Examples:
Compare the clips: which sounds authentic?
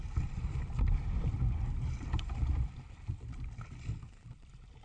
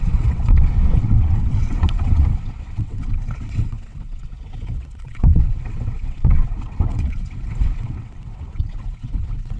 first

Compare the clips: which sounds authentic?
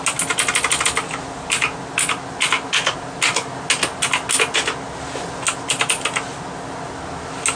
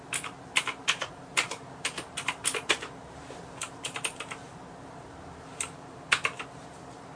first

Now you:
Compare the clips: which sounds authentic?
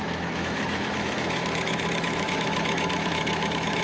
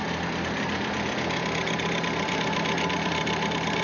second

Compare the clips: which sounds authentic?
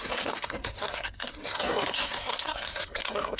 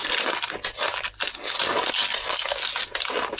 second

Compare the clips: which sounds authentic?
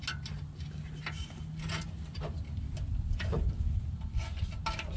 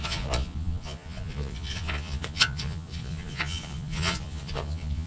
first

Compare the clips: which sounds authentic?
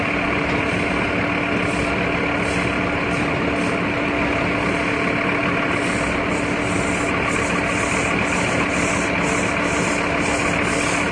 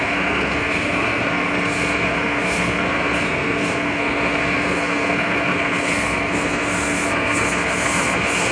first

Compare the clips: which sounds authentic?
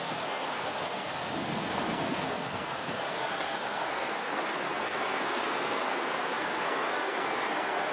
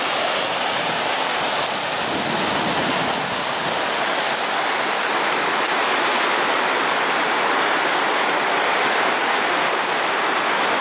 second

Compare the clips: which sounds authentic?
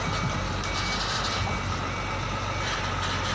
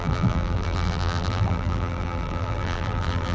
first